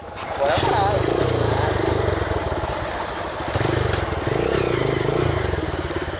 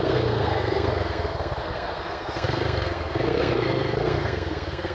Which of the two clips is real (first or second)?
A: first